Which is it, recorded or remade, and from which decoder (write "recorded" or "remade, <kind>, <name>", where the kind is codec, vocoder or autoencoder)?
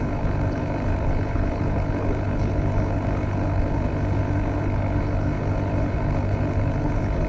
remade, codec, HILCodec